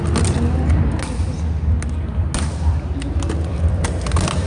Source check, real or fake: real